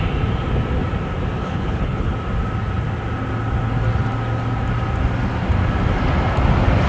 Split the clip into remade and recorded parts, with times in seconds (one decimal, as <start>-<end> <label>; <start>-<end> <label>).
0.0-1.4 recorded; 1.4-2.1 remade; 2.1-6.9 recorded